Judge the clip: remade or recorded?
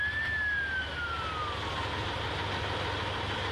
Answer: recorded